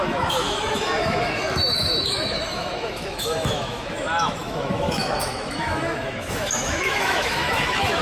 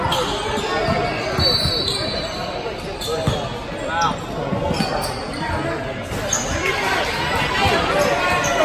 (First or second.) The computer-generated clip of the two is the first